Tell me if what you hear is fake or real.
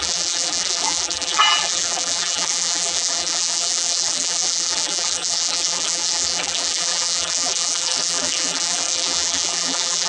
fake